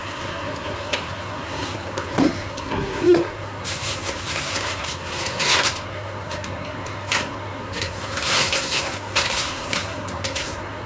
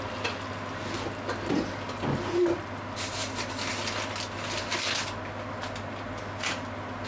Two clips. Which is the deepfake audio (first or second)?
first